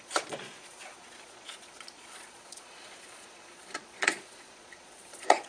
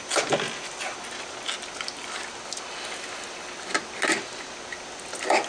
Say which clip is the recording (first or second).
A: second